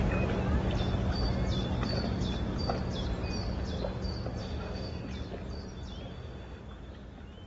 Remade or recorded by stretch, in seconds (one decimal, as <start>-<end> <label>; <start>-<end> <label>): 0.0-4.4 recorded; 4.4-5.0 remade; 5.0-6.1 recorded; 6.1-6.6 remade; 6.6-7.5 recorded